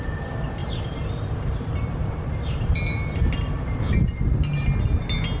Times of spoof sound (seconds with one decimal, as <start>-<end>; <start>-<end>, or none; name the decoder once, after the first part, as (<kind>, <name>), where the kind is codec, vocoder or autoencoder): 0.6-3.8 (vocoder, BigVGAN v2)